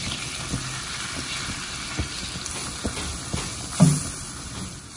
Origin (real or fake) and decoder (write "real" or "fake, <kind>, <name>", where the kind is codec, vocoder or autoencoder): real